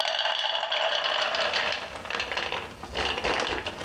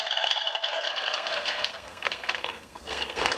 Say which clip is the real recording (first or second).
first